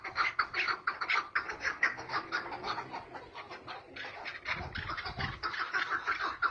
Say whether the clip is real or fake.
real